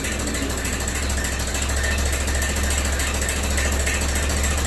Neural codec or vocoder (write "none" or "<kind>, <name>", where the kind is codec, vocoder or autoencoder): none